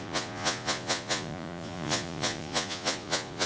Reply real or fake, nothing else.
fake